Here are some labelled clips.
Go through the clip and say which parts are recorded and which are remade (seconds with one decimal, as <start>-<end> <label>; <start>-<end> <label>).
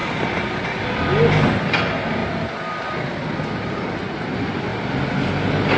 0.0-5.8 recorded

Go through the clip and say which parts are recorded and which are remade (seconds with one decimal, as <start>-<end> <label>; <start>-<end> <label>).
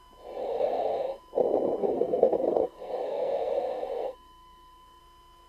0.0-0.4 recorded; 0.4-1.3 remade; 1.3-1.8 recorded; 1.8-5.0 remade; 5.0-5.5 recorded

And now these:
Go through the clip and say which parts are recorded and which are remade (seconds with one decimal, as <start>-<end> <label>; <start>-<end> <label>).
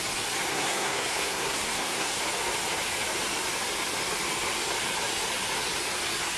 0.0-0.5 recorded; 0.5-2.2 remade; 2.2-6.4 recorded